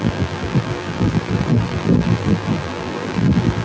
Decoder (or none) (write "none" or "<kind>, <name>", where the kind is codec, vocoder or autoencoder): vocoder, BigVGAN v2